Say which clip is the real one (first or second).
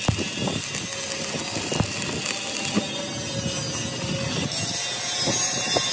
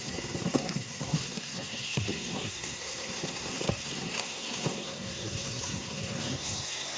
first